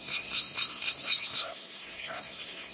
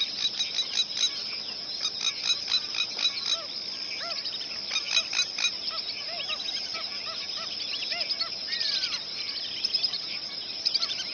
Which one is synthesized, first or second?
first